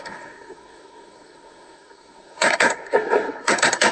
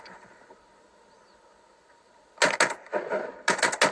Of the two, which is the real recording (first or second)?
second